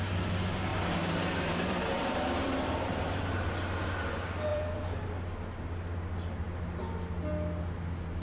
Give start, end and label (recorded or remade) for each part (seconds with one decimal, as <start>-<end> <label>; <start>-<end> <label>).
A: 0.0-0.7 recorded; 0.7-3.2 remade; 3.2-4.5 recorded; 4.5-5.1 remade; 5.1-8.2 recorded

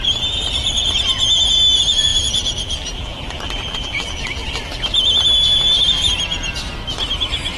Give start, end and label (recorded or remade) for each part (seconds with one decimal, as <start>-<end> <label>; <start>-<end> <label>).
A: 0.0-2.1 recorded; 2.1-6.1 remade; 6.1-7.6 recorded